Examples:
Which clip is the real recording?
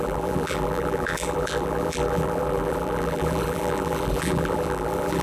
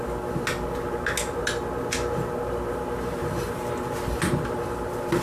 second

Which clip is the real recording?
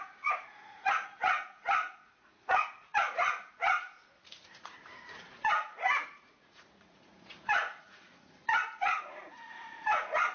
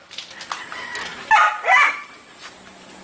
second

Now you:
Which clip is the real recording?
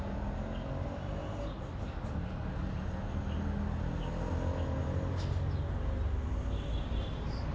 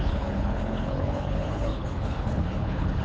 first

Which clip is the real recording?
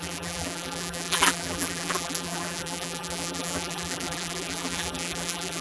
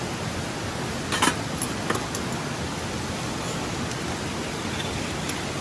second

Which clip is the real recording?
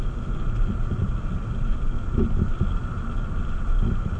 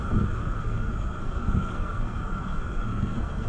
first